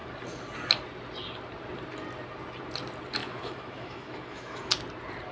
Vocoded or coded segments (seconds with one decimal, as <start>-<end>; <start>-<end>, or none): 3.2-4.7